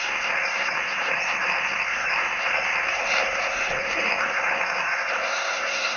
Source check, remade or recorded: remade